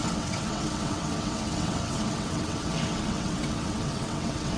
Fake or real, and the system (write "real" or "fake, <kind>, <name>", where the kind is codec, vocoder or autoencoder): fake, vocoder, WaveNeXt